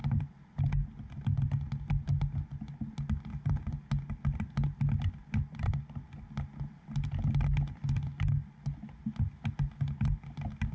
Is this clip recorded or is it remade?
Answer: recorded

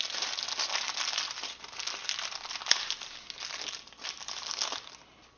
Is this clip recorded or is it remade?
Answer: recorded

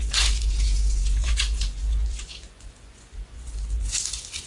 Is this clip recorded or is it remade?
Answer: remade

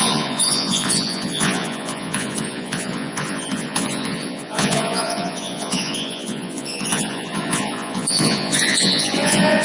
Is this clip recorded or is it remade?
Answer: remade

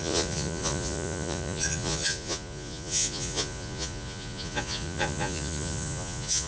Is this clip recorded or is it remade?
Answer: remade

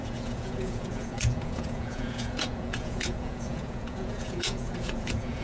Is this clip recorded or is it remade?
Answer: remade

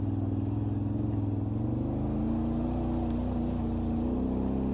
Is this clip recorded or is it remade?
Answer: recorded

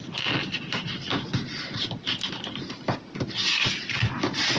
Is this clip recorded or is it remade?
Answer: recorded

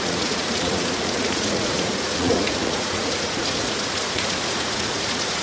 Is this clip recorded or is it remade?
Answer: remade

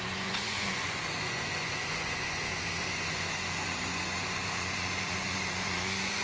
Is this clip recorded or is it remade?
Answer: remade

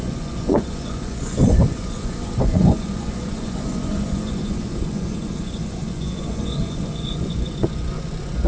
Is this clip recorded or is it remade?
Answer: remade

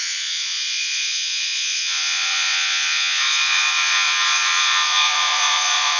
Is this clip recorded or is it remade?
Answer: remade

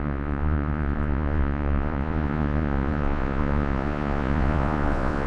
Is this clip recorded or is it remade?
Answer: remade